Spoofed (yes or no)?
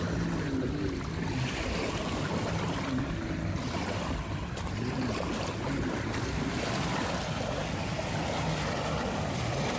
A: no